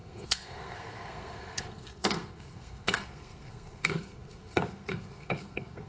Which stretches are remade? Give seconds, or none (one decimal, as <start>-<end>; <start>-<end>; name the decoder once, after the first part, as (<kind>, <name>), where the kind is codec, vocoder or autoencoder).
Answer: 0.0-5.9 (codec, SNAC)